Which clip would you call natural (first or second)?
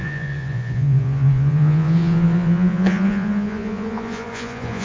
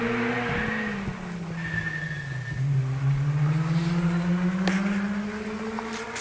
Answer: second